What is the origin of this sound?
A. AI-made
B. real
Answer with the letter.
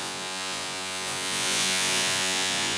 A